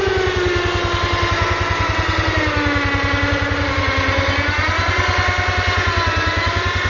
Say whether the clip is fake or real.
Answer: real